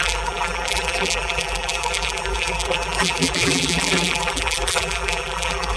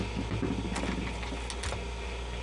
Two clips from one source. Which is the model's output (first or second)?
first